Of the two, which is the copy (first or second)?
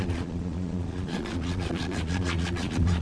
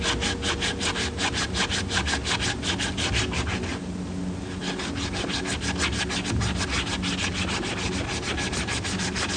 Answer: first